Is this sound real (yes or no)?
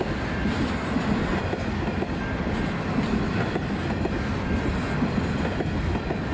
yes